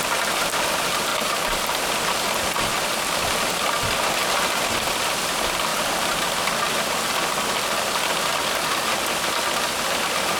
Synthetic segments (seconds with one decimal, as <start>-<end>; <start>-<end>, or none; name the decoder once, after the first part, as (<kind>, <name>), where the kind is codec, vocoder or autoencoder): 1.1-2.5 (vocoder, BigVGAN v2); 4.2-5.3